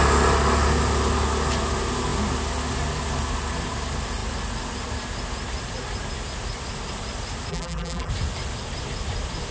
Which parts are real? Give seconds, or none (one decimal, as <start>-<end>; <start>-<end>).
0.0-7.5; 8.1-9.5